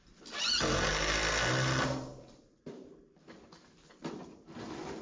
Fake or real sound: real